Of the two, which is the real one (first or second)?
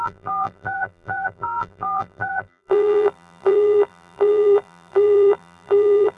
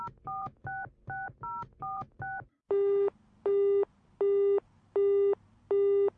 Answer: second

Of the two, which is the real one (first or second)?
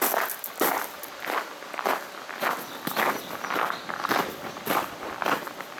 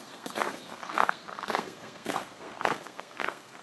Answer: first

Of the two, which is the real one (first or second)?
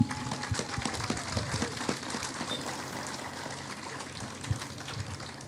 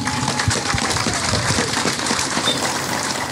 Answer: first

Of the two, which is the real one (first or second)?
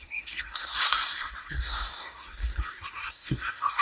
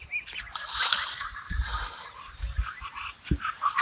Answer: second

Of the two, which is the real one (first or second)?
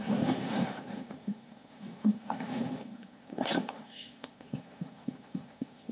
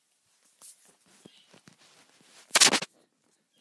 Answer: second